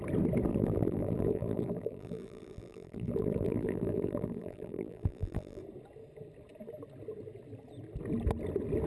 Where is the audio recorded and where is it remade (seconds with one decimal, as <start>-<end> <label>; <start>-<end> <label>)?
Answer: 0.0-0.5 recorded; 0.5-5.6 remade; 5.6-8.9 recorded